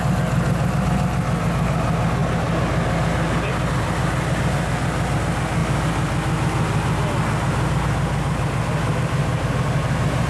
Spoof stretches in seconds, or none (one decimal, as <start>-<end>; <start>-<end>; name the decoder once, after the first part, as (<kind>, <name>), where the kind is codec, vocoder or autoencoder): none